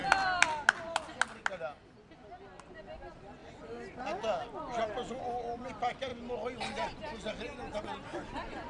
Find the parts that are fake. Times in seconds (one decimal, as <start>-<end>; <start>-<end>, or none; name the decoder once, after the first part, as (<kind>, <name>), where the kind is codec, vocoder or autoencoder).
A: none